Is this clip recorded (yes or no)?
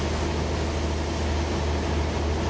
yes